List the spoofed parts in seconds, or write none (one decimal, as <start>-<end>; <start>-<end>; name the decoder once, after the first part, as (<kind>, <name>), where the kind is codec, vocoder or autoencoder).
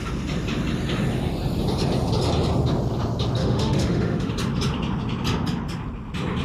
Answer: 3.4-4.3 (autoencoder, DAC-VAE)